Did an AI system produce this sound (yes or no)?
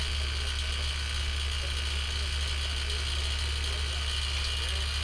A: no